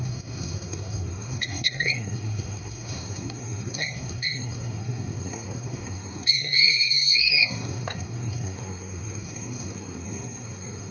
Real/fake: fake